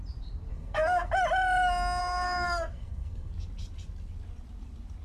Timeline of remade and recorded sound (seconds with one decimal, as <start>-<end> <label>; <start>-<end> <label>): 0.0-0.5 recorded; 0.5-1.1 remade; 1.1-2.0 recorded; 2.0-3.3 remade; 3.3-5.0 recorded